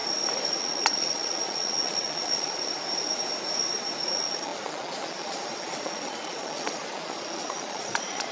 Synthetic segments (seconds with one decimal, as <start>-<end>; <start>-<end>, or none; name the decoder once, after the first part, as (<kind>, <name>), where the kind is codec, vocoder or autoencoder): 0.6-2.7 (vocoder, Vocos); 4.1-8.3

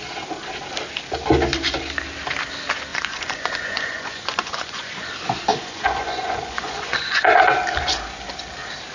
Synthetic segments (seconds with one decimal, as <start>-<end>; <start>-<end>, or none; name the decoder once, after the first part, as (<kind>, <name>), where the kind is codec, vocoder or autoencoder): 2.9-5.1 (vocoder, Vocos); 5.5-7.4

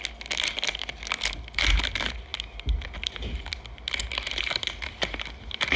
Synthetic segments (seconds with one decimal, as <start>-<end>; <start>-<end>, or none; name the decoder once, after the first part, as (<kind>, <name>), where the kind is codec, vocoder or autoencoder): none